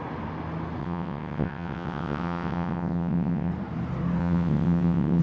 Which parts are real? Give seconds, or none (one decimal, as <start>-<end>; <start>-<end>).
0.0-0.8; 3.5-4.2